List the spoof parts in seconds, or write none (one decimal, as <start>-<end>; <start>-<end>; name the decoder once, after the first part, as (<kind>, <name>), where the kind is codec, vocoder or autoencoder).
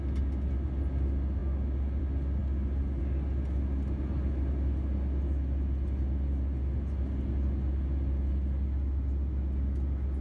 none